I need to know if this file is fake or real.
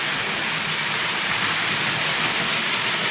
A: real